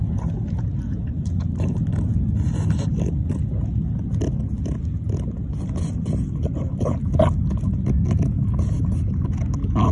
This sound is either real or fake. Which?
real